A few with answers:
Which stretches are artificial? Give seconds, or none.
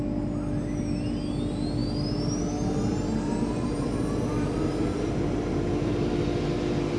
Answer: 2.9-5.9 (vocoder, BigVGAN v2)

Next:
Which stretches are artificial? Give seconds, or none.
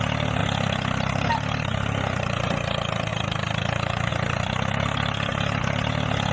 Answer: 3.1-4.1 (vocoder, BigVGAN v2)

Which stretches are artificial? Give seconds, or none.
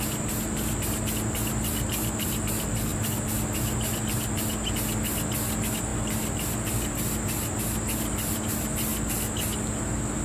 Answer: 5.9-6.5 (vocoder, BigVGAN v2)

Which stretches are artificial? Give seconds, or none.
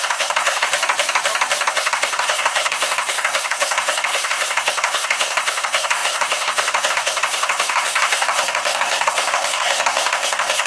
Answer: 0.0-0.7 (codec, SNAC); 1.7-10.7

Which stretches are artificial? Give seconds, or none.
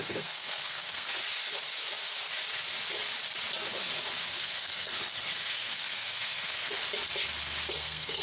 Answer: 0.0-1.2 (codec, SNAC); 4.4-6.8; 7.7-8.2